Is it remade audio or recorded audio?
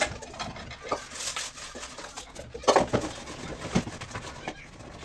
recorded